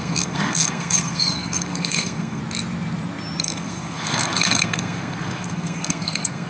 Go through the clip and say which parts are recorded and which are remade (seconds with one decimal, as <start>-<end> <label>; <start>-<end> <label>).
0.0-2.4 remade; 2.4-3.4 recorded; 3.4-6.5 remade